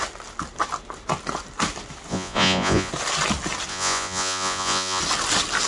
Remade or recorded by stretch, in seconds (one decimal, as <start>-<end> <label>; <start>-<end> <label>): 0.0-2.1 recorded; 2.1-2.9 remade; 2.9-3.7 recorded; 3.7-5.0 remade; 5.0-5.7 recorded